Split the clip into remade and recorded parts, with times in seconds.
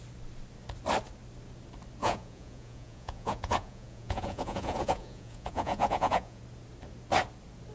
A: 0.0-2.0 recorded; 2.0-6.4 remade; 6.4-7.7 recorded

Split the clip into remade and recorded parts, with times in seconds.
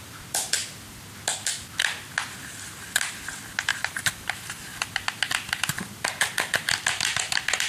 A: 0.0-3.7 recorded; 3.7-4.3 remade; 4.3-7.7 recorded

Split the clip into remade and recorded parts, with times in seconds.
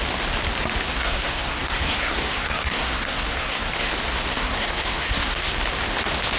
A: 0.0-0.9 recorded; 0.9-3.9 remade; 3.9-4.3 recorded; 4.3-5.6 remade; 5.6-6.4 recorded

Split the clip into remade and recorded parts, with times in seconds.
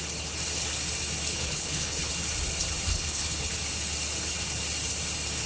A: 0.0-1.3 recorded; 1.3-2.1 remade; 2.1-2.9 recorded; 2.9-3.5 remade; 3.5-5.5 recorded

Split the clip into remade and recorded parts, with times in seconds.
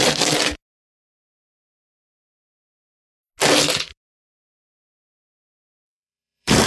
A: 0.0-5.5 recorded; 5.5-6.7 remade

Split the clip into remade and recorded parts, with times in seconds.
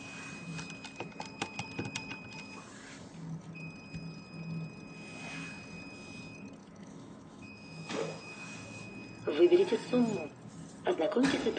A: 0.0-6.6 recorded; 6.6-8.9 remade; 8.9-11.6 recorded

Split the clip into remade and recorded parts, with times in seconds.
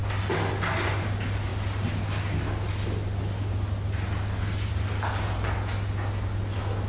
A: 0.0-6.9 recorded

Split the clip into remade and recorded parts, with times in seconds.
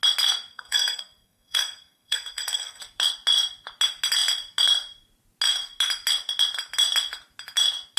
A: 0.0-0.5 recorded; 0.5-2.8 remade; 2.8-8.0 recorded